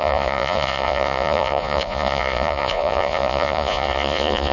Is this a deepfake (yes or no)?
yes